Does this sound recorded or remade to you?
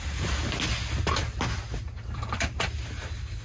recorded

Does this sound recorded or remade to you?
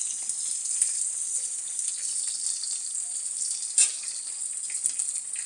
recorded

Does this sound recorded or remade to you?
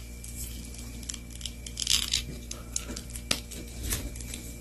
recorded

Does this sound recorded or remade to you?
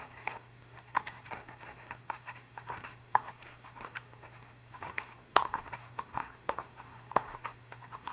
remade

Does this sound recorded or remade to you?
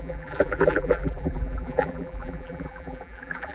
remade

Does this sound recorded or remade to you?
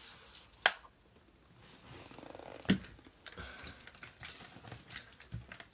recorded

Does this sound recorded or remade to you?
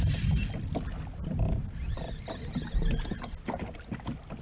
recorded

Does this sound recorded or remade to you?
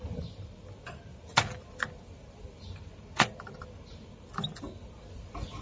recorded